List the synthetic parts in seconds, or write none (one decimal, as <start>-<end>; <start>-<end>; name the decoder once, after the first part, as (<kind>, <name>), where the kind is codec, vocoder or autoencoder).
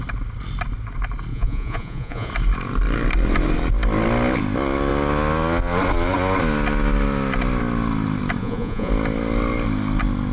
1.3-2.3 (vocoder, Vocos); 8.4-8.9